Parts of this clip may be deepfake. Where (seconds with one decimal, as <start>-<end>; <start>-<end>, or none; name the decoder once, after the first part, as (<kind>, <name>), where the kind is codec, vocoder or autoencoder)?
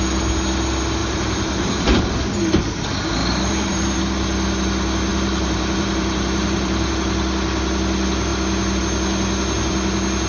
1.0-2.0 (vocoder, BigVGAN v2); 3.2-4.0; 5.1-6.9